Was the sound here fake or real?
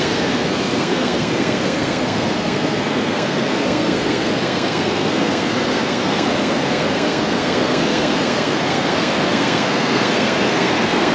fake